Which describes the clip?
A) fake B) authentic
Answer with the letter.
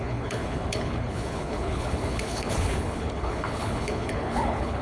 A